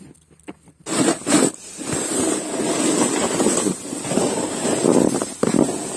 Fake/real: real